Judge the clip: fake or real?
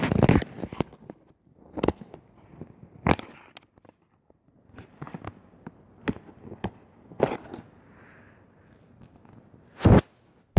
real